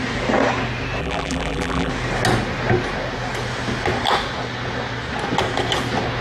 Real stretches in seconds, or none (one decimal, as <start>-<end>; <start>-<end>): 0.0-1.0; 1.9-6.2